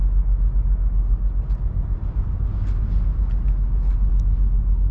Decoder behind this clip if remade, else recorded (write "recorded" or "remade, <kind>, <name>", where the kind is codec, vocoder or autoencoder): recorded